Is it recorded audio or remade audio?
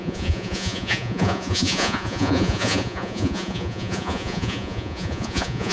remade